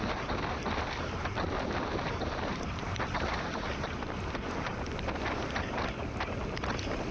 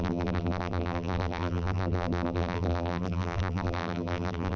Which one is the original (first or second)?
first